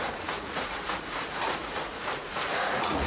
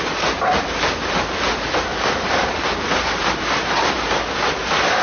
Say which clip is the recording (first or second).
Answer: second